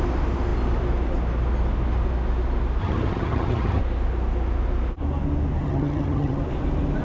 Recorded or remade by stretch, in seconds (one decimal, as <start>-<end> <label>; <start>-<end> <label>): 0.0-2.8 recorded; 2.8-3.8 remade; 3.8-5.6 recorded; 5.6-6.4 remade; 6.4-7.0 recorded